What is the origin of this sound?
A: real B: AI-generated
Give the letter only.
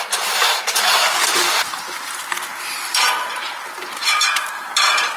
B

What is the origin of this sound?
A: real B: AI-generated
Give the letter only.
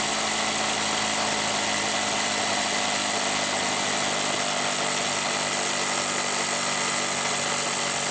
A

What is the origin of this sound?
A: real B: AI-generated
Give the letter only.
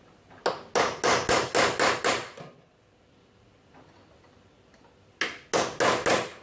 A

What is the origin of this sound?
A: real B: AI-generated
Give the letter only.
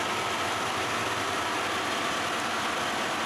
B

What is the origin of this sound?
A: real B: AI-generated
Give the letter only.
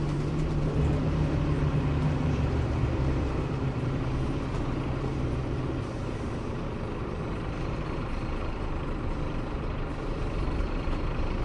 B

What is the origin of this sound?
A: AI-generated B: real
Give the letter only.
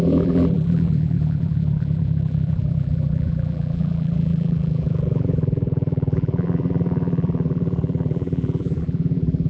A